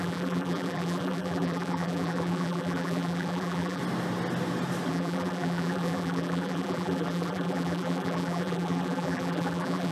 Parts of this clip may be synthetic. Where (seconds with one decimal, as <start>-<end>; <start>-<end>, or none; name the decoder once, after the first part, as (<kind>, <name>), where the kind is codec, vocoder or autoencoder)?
0.0-3.8 (vocoder, BigVGAN v2); 4.9-9.9